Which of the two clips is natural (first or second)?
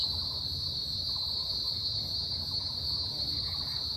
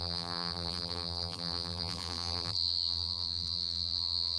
first